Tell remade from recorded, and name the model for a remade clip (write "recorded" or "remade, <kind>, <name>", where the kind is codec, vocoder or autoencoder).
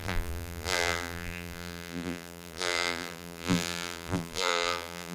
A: remade, vocoder, BigVGAN v2